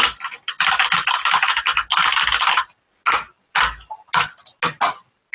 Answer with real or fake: real